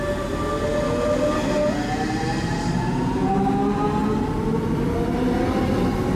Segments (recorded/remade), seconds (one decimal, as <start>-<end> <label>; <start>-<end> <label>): 0.0-4.0 recorded; 4.0-5.0 remade; 5.0-6.2 recorded